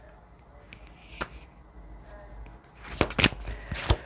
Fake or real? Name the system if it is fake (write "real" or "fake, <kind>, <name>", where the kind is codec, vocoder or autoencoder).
real